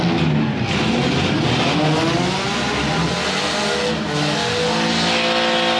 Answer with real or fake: real